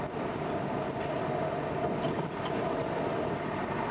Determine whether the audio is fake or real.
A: real